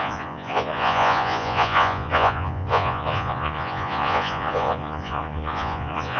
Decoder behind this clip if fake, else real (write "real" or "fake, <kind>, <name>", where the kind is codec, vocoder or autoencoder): fake, vocoder, Vocos